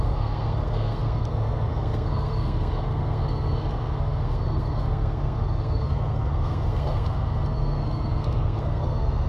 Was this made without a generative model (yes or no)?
no